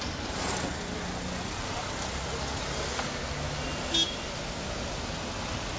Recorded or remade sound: recorded